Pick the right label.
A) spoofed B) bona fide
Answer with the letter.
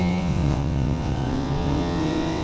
A